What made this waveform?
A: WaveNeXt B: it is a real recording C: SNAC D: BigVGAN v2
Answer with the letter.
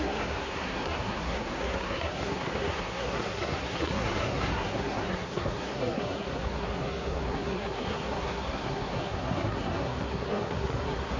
C